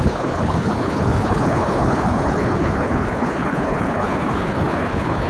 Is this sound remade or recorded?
remade